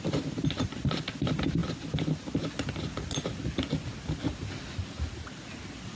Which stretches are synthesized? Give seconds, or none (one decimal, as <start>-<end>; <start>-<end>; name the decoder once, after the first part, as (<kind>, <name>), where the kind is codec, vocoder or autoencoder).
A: none